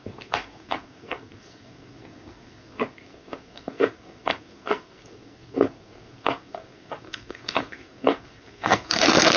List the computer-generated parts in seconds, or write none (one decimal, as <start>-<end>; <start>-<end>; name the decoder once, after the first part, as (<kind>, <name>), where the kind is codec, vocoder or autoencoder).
0.0-9.4 (codec, SNAC)